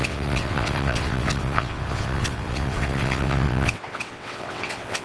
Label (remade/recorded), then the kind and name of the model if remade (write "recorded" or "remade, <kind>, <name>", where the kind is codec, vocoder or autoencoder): remade, vocoder, WaveNeXt